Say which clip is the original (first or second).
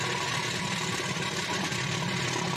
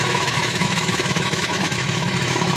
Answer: first